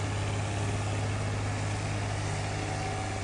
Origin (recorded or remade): recorded